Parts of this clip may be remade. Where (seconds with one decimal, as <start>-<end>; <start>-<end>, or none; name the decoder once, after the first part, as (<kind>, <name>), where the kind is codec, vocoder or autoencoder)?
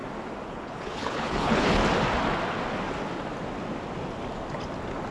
0.5-1.8 (codec, HILCodec)